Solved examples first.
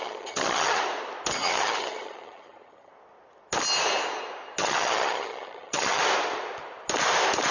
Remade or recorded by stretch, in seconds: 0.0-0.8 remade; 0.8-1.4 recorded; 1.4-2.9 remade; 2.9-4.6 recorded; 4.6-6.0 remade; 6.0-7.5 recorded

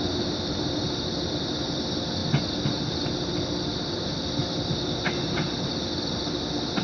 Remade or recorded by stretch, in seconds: 0.0-6.8 recorded

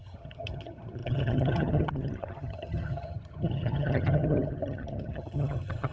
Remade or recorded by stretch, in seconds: 0.0-5.9 remade

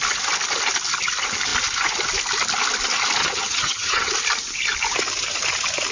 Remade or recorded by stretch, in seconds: 0.0-3.2 recorded; 3.2-4.1 remade; 4.1-5.9 recorded

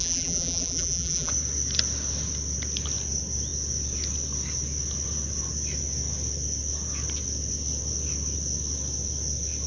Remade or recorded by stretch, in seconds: 0.0-1.3 remade; 1.3-9.7 recorded